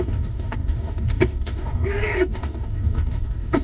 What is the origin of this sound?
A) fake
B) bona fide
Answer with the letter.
A